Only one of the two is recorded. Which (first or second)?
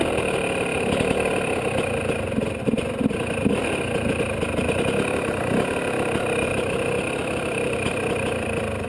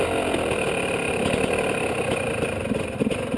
first